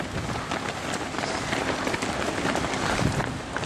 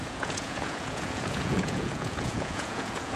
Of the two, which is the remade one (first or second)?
second